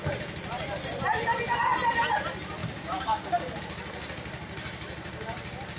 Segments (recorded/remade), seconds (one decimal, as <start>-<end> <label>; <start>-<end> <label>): 0.0-2.6 recorded; 2.6-3.6 remade; 3.6-5.8 recorded